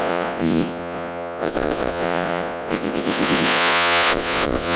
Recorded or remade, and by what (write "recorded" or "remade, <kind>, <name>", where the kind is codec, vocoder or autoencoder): remade, vocoder, Vocos